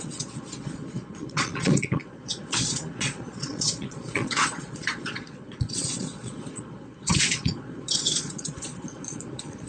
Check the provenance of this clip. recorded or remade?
remade